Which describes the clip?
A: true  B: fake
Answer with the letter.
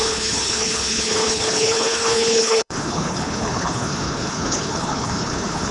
B